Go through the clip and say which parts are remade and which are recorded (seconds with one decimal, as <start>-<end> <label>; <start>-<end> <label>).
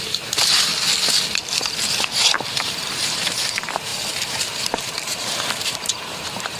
0.0-0.7 remade; 0.7-2.1 recorded; 2.1-6.6 remade